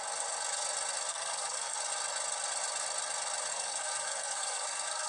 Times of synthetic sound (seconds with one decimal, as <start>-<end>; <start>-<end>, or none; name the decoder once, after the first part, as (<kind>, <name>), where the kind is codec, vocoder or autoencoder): 1.1-1.8 (codec, SNAC); 3.5-5.1